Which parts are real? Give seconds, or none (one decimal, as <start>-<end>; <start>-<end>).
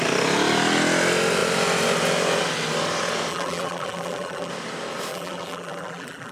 0.0-3.3; 4.5-5.1